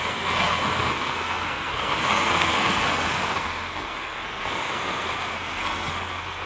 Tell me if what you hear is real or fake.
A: fake